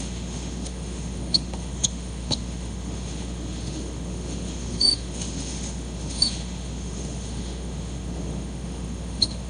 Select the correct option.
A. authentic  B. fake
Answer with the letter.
B